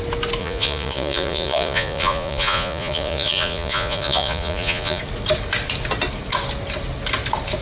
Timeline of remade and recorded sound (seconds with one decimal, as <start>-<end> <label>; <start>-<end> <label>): 0.0-0.4 recorded; 0.4-5.0 remade; 5.0-7.6 recorded

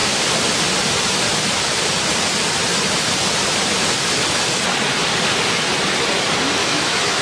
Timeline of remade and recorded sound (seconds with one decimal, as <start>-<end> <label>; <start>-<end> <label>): 0.0-6.6 recorded; 6.6-7.2 remade

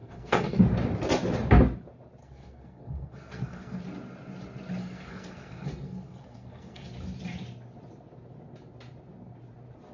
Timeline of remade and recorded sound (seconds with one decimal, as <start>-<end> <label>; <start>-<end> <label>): 0.0-0.6 remade; 0.6-2.2 recorded; 2.2-3.8 remade; 3.8-4.8 recorded; 4.8-6.9 remade; 6.9-9.9 recorded

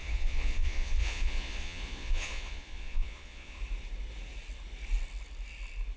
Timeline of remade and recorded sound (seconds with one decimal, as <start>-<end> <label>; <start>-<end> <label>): 0.0-3.6 remade; 3.6-6.0 recorded

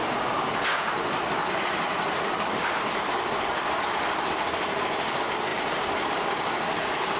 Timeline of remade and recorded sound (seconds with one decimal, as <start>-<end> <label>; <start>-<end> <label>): 0.0-4.3 recorded; 4.3-7.2 remade

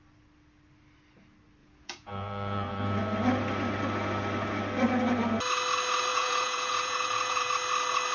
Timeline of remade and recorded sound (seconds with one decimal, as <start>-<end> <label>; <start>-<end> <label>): 0.0-1.6 recorded; 1.6-2.8 remade; 2.8-6.1 recorded; 6.1-7.5 remade; 7.5-8.1 recorded

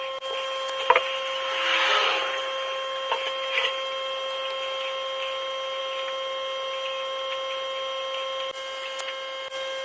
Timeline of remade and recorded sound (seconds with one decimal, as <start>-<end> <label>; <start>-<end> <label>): 0.0-9.8 recorded

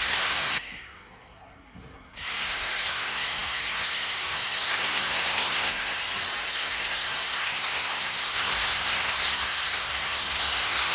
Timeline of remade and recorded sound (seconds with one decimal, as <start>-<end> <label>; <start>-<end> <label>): 0.0-6.0 remade; 6.0-6.5 recorded; 6.5-10.9 remade